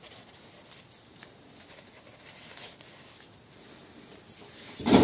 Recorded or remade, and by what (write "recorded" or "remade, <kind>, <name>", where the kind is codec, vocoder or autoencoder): recorded